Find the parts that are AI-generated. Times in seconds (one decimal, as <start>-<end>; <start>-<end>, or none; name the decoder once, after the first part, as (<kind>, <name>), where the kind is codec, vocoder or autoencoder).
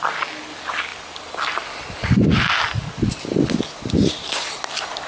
none